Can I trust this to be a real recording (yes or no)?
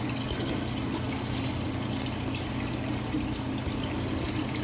yes